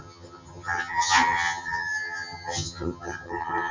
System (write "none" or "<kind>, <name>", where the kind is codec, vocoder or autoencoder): vocoder, HiFi-GAN